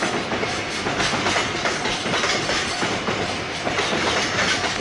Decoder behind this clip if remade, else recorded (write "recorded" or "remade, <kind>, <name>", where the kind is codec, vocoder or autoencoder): recorded